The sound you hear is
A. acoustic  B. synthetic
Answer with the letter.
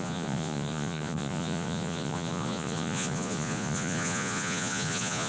B